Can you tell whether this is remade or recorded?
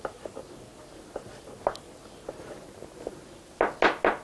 recorded